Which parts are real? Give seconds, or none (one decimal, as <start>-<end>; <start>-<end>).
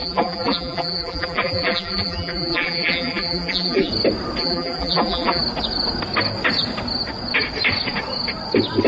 3.9-4.4; 5.4-8.9